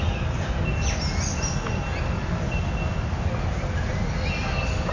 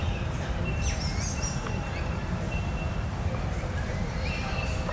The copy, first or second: second